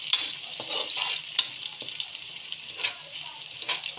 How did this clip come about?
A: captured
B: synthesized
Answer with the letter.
B